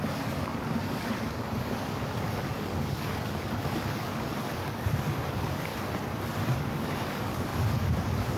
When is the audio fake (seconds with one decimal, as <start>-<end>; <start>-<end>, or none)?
0.0-5.7; 6.7-8.4